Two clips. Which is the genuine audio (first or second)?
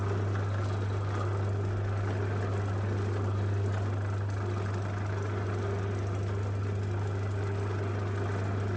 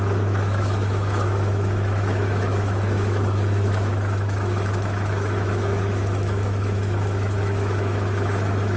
first